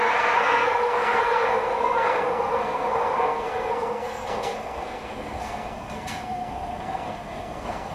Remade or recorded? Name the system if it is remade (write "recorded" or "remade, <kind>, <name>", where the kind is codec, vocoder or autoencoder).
remade, codec, SNAC